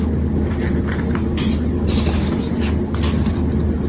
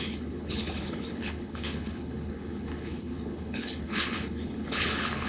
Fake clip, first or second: second